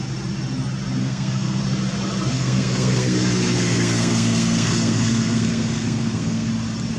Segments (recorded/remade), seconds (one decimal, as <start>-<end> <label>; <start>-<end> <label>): 0.0-1.0 recorded; 1.0-1.6 remade; 1.6-2.3 recorded; 2.3-6.5 remade; 6.5-7.0 recorded